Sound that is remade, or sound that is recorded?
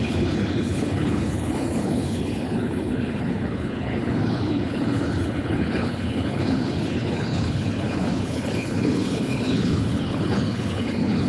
remade